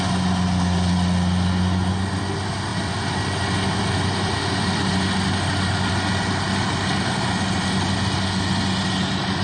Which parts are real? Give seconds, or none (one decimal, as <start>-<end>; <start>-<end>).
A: 0.0-9.4

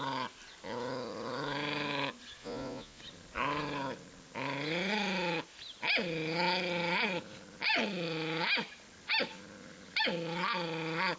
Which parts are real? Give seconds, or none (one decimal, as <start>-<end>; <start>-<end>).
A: 0.0-2.4; 3.0-11.2

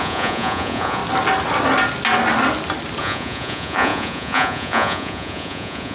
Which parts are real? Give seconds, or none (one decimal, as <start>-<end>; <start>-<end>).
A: 1.0-3.0